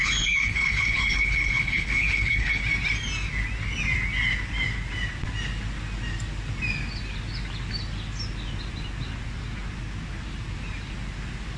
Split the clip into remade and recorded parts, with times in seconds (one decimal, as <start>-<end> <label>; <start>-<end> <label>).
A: 0.0-2.6 remade; 2.6-11.6 recorded